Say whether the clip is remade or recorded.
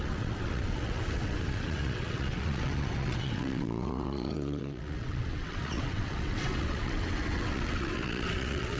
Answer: remade